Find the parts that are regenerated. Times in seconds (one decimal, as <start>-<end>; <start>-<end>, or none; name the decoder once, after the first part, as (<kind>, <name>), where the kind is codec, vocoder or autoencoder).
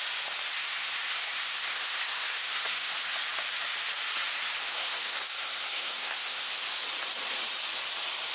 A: 0.5-2.9 (codec, SNAC); 4.6-6.5